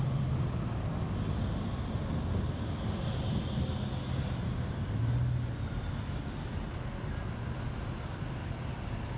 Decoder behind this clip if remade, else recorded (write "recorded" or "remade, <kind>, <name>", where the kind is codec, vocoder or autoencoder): recorded